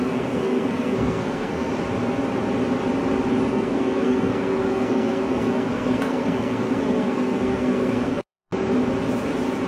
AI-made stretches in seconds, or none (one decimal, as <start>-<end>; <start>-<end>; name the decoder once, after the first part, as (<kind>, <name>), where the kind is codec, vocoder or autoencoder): 0.0-1.7 (codec, SNAC); 3.5-8.5